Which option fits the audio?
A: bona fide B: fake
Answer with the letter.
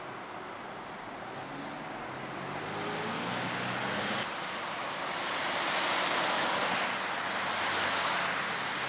A